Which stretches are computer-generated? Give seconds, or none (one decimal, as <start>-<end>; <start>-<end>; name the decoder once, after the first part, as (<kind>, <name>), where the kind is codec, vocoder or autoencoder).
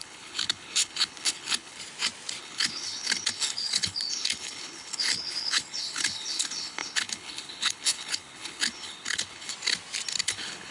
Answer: 0.0-1.8 (codec, HILCodec); 2.4-9.5; 10.2-10.7